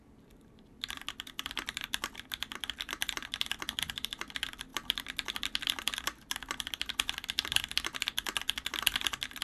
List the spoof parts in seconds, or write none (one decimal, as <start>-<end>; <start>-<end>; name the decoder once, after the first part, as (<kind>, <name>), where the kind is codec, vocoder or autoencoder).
0.0-9.4 (vocoder, BigVGAN v2)